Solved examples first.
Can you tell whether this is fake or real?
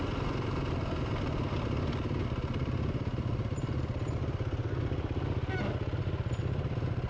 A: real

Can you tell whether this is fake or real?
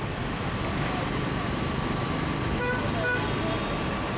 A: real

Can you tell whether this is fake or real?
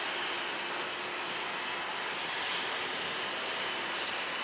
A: real